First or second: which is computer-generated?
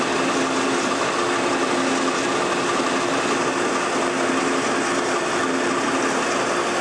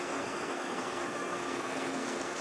second